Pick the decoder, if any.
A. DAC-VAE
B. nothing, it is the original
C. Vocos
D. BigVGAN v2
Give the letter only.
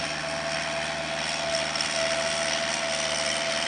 B